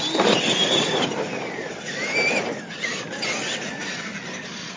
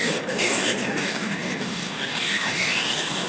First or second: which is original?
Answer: first